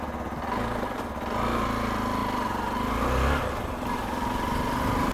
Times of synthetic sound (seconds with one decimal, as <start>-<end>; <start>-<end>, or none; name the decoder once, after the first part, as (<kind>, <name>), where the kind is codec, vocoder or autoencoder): none